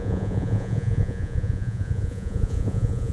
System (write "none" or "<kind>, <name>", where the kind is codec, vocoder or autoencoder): vocoder, Vocos